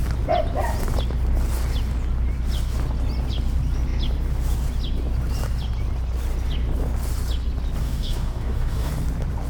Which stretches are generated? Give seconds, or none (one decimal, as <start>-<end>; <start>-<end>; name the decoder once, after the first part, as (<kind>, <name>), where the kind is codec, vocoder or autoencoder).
7.8-8.9 (codec, DAC)